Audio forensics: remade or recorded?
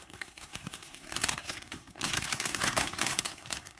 remade